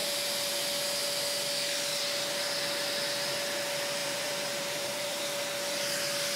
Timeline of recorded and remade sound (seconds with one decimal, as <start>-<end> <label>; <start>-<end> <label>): 0.0-4.0 recorded; 4.0-5.2 remade; 5.2-6.4 recorded